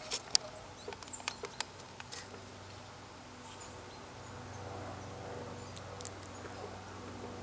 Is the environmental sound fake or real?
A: real